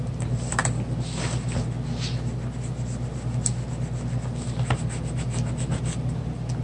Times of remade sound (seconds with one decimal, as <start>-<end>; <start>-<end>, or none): none